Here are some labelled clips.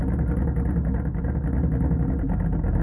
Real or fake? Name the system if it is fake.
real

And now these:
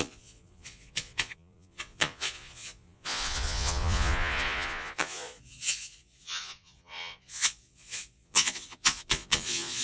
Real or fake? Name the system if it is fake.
fake, vocoder, Vocos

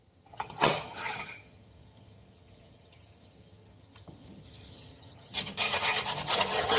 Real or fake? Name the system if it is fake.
fake, vocoder, HiFi-GAN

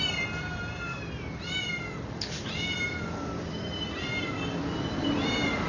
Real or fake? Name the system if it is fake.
fake, vocoder, BigVGAN v2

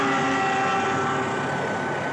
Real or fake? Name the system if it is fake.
real